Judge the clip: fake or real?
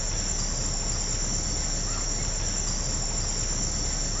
real